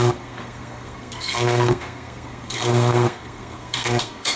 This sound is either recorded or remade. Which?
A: remade